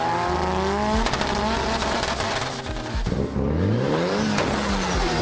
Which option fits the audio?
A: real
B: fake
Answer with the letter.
A